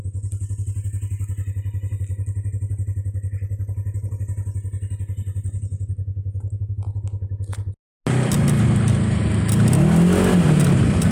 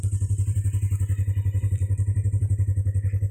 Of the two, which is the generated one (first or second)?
second